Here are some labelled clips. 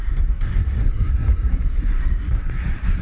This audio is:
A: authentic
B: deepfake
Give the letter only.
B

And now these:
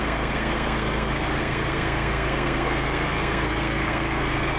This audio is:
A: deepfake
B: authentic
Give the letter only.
A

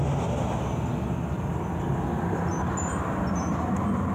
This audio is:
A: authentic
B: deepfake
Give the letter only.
A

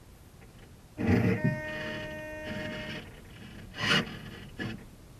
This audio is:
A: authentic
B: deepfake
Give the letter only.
A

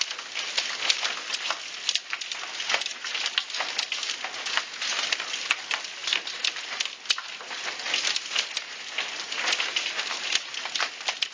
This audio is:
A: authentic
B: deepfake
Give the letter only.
A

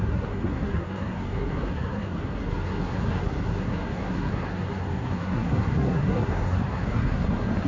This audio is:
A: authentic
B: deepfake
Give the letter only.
B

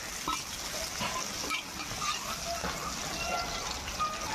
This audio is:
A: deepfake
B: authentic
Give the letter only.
B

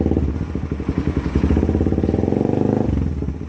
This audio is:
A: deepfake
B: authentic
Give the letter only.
B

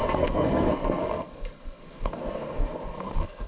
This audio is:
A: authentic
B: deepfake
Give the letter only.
B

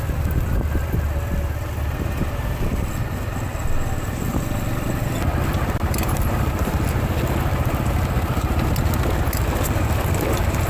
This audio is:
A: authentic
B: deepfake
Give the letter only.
A